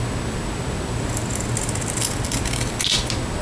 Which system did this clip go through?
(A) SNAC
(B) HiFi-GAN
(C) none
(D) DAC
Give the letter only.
C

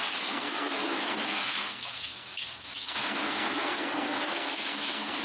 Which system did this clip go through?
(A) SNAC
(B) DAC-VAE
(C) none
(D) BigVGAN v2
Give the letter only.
A